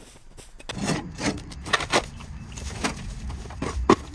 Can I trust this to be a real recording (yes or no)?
yes